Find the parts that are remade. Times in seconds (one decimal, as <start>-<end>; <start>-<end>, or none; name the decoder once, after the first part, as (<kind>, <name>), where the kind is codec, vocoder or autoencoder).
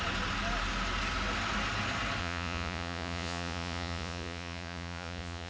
2.2-5.5 (vocoder, Vocos)